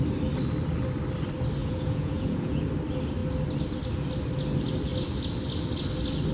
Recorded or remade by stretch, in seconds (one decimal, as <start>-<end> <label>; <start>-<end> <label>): 0.0-1.6 recorded; 1.6-2.7 remade; 2.7-6.3 recorded